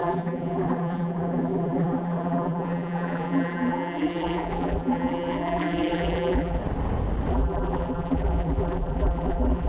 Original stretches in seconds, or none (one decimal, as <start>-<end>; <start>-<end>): 6.6-7.3